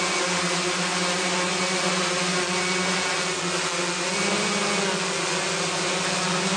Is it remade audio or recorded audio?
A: recorded